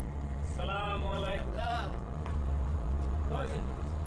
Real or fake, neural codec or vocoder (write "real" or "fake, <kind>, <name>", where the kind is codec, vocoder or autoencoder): fake, vocoder, Vocos